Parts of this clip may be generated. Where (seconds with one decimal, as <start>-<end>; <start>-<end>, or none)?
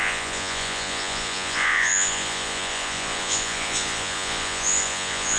0.0-5.4